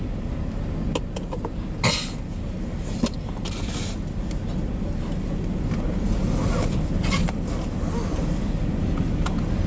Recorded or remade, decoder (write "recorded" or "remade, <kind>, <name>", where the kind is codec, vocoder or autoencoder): recorded